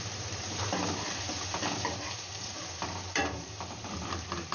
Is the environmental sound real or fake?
fake